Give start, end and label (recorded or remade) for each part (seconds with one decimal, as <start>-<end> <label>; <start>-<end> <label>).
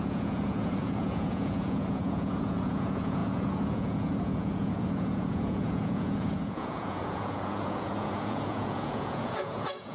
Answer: 0.0-9.9 remade